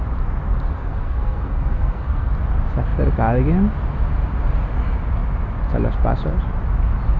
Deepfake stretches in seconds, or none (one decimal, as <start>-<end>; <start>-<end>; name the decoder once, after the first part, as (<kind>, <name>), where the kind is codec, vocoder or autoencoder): 0.7-2.3 (codec, SNAC)